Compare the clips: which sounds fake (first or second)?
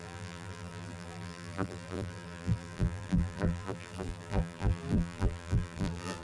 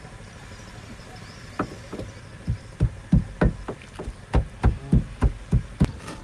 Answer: first